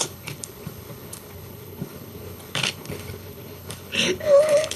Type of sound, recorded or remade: remade